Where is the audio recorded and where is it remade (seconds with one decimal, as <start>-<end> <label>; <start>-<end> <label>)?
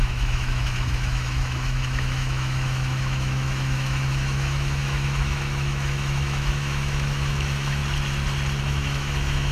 0.0-7.8 remade; 7.8-8.6 recorded; 8.6-9.5 remade